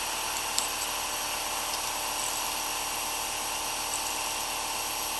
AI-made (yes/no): no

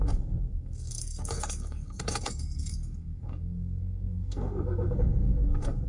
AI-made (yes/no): yes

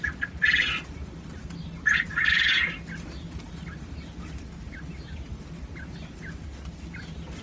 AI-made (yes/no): no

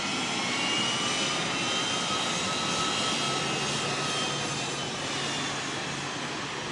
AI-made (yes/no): no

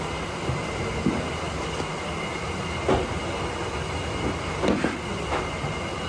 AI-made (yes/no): no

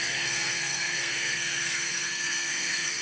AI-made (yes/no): yes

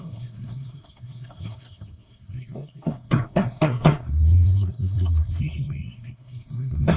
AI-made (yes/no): yes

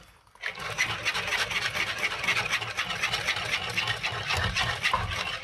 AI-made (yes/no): no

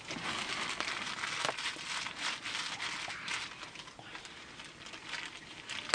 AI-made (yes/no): no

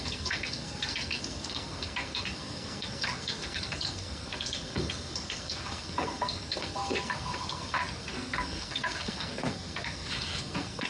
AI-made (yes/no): yes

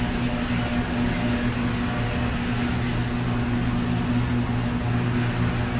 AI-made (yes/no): no